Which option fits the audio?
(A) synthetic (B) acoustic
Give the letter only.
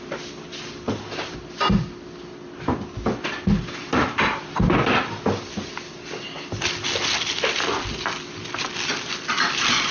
B